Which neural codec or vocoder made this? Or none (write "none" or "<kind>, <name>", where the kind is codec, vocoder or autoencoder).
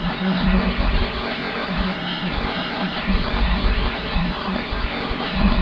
codec, SNAC